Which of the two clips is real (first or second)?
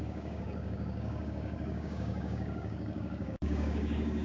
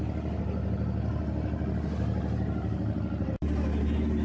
second